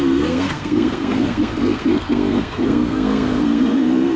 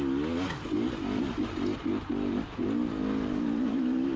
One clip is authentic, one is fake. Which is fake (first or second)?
first